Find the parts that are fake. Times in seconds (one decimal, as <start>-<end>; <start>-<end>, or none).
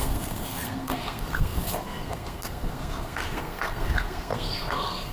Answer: 0.0-5.1